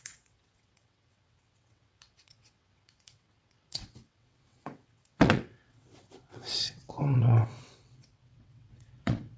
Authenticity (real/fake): fake